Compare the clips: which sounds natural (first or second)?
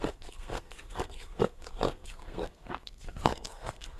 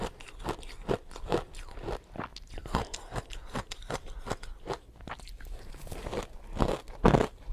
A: second